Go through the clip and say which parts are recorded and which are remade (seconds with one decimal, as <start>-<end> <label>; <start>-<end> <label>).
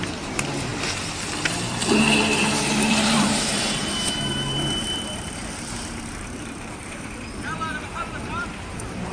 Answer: 0.0-0.7 remade; 0.7-2.4 recorded; 2.4-9.1 remade